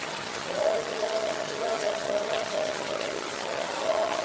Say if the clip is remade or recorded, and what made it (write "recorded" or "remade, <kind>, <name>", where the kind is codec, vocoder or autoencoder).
remade, vocoder, HiFi-GAN